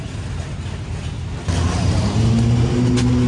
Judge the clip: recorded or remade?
recorded